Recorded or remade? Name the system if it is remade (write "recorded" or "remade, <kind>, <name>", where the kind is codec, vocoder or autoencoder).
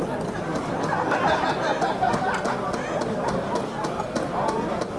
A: recorded